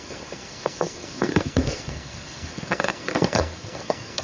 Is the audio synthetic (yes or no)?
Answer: yes